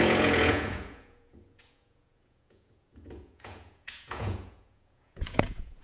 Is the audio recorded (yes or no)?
no